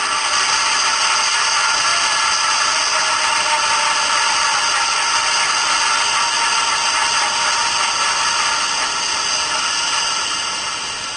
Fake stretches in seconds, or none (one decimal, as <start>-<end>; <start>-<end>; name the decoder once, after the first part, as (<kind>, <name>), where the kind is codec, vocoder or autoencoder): none